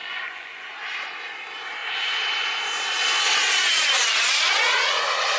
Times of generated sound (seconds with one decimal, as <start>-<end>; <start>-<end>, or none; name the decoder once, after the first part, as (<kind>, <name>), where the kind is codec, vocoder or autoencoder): 0.0-0.6 (vocoder, Vocos)